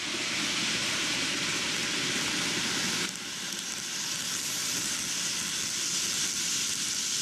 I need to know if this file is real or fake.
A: real